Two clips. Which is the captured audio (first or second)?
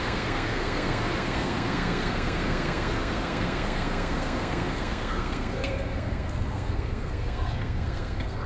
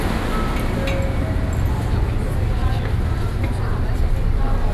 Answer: second